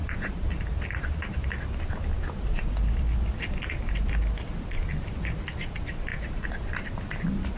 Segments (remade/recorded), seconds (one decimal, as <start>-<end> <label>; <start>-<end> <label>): 0.0-7.6 remade